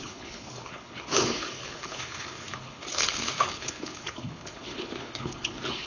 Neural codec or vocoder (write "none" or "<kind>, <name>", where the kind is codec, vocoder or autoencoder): codec, HILCodec